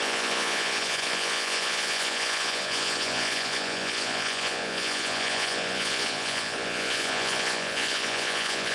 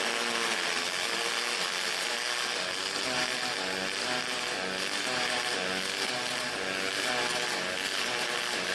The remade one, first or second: first